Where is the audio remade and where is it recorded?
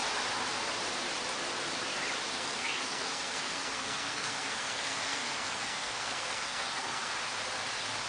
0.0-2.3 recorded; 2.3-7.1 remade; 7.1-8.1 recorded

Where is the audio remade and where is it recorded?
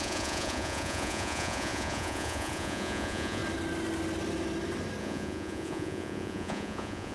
0.0-3.4 remade; 3.4-5.0 recorded; 5.0-7.1 remade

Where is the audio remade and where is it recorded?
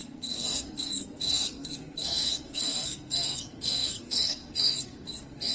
0.0-5.5 remade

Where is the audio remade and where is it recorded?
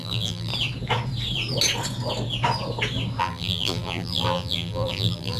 0.0-0.5 remade; 0.5-3.2 recorded; 3.2-5.4 remade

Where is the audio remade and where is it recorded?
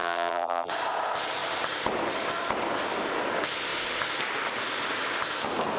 0.0-0.7 remade; 0.7-5.8 recorded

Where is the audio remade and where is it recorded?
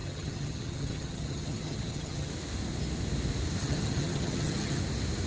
0.0-2.3 remade; 2.3-3.6 recorded; 3.6-4.8 remade; 4.8-5.3 recorded